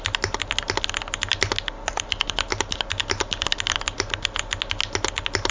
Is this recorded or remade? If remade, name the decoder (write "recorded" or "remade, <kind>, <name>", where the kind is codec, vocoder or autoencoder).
recorded